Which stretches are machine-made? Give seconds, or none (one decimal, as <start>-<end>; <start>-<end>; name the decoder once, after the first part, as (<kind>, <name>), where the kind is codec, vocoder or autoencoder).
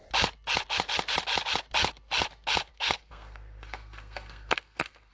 2.7-5.1 (codec, SNAC)